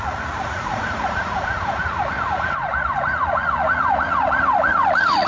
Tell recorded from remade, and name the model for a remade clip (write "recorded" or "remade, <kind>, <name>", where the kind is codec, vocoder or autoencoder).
remade, vocoder, Vocos